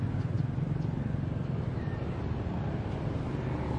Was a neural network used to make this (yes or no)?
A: no